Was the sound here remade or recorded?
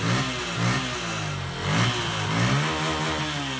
recorded